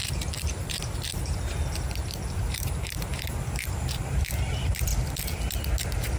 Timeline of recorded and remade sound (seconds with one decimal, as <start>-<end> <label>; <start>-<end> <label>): 0.0-4.9 remade; 4.9-5.8 recorded; 5.8-6.2 remade